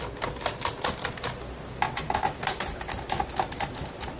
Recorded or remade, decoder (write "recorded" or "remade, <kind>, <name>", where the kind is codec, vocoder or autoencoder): recorded